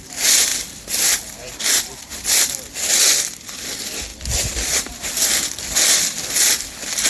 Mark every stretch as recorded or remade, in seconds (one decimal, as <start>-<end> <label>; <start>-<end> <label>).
0.0-7.1 recorded